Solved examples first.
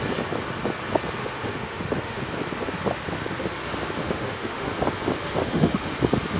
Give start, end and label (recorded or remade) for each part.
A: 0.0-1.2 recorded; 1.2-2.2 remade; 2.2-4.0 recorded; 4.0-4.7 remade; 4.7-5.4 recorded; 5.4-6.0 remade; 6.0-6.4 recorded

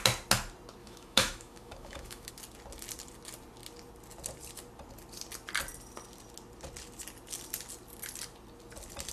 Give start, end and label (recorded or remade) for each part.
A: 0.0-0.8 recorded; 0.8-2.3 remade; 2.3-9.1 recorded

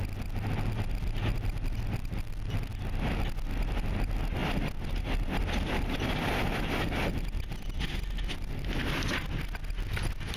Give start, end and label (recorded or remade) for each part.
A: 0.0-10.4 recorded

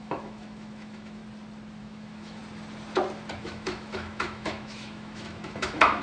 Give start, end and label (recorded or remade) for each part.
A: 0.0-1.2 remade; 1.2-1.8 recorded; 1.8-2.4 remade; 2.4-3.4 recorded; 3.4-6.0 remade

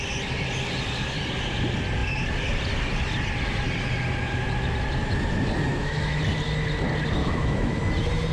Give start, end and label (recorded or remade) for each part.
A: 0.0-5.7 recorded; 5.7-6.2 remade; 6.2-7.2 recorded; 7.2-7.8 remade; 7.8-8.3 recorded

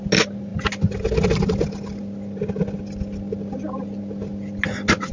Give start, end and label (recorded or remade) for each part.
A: 0.0-5.1 recorded

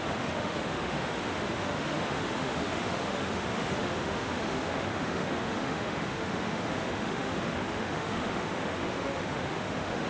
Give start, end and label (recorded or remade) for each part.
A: 0.0-10.1 remade